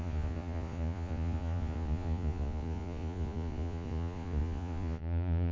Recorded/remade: remade